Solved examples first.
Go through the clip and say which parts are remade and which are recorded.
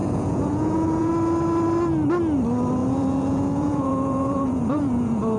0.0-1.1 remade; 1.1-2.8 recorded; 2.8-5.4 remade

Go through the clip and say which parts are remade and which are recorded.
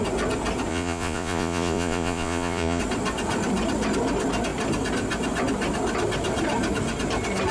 0.0-0.7 recorded; 0.7-2.8 remade; 2.8-7.5 recorded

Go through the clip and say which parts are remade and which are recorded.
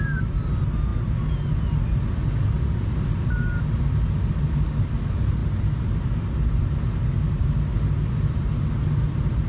0.0-9.5 recorded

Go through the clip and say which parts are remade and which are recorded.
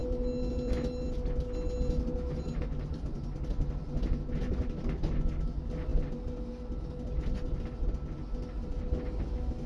0.0-9.7 recorded